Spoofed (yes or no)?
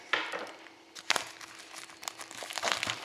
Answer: no